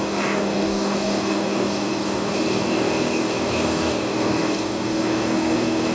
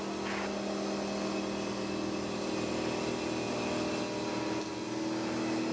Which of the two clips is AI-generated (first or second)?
first